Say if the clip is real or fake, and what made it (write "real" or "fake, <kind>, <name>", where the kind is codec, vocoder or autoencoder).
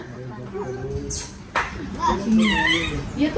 real